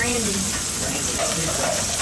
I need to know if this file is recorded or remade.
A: remade